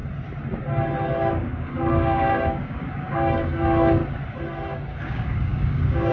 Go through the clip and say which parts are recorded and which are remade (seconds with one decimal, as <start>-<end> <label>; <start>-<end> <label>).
0.0-1.3 recorded; 1.3-4.0 remade; 4.0-5.0 recorded; 5.0-6.1 remade